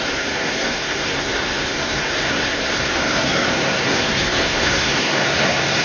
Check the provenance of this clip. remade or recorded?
remade